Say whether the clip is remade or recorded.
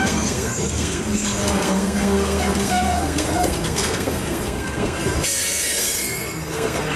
remade